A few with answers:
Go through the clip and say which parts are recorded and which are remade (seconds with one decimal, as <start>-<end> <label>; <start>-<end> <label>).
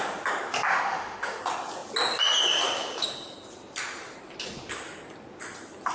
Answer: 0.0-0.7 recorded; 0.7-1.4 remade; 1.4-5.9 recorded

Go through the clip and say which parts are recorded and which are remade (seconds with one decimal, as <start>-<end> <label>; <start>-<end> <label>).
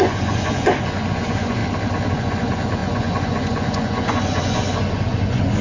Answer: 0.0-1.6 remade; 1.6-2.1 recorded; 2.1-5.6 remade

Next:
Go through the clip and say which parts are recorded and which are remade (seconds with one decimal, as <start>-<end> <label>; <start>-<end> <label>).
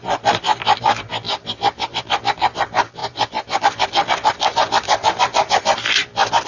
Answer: 0.0-1.1 remade; 1.1-2.0 recorded; 2.0-6.5 remade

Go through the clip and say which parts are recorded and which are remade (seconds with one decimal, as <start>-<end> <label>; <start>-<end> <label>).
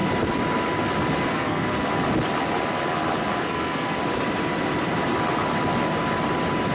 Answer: 0.0-1.3 recorded; 1.3-1.9 remade; 1.9-3.4 recorded; 3.4-4.0 remade; 4.0-6.7 recorded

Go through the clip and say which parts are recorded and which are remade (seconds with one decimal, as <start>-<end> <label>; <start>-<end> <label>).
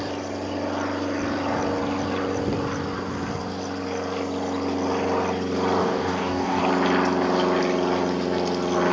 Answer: 0.0-5.8 recorded; 5.8-6.6 remade; 6.6-8.9 recorded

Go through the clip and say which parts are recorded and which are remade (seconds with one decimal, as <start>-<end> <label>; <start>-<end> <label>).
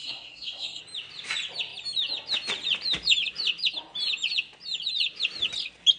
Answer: 0.0-0.8 remade; 0.8-6.0 recorded